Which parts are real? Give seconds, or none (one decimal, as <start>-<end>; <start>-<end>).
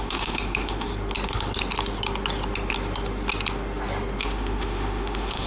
0.9-4.2